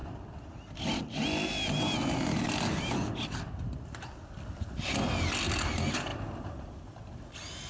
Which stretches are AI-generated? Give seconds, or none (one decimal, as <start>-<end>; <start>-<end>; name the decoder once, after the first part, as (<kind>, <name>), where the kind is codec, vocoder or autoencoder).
none